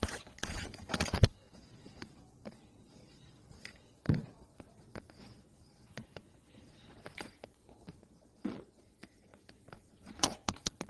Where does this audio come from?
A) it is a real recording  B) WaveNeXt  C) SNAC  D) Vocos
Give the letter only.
D